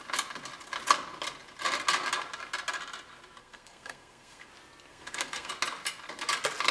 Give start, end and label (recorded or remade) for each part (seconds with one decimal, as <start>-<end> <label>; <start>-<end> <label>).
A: 0.0-3.4 recorded; 3.4-4.5 remade; 4.5-4.9 recorded; 4.9-5.5 remade; 5.5-6.7 recorded